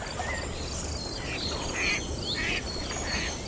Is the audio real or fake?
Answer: real